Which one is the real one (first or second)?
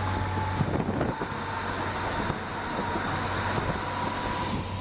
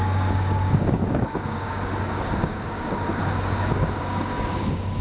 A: first